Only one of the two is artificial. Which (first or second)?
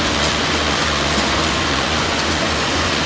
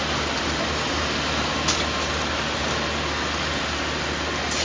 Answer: first